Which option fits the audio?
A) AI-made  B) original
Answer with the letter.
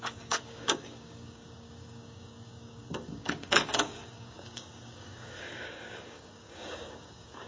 A